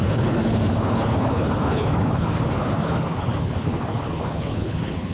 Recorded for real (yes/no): no